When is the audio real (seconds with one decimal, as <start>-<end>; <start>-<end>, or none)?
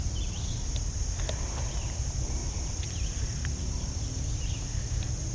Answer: 0.0-2.4; 3.2-5.3